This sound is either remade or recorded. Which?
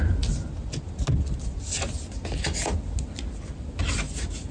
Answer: recorded